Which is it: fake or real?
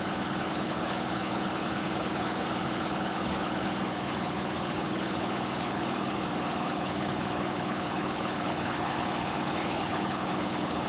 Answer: fake